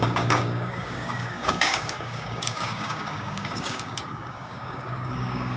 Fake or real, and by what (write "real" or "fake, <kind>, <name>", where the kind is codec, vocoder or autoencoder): fake, codec, DAC